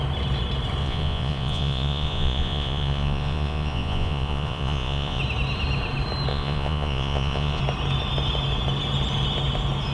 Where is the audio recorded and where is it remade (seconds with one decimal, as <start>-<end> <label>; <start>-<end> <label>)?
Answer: 0.0-0.8 recorded; 0.8-5.2 remade; 5.2-6.3 recorded; 6.3-7.6 remade; 7.6-9.9 recorded